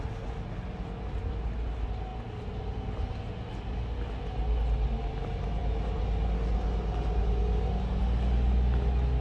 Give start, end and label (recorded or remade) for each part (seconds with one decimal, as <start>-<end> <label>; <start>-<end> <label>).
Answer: 0.0-9.2 recorded